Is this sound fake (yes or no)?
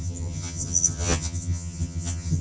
yes